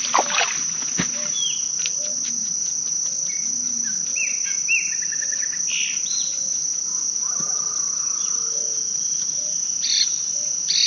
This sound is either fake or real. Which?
real